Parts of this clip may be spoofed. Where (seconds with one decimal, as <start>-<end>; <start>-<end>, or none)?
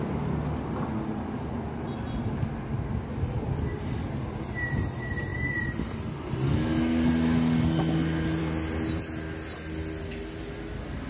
none